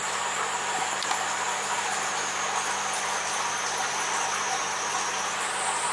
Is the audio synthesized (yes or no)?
no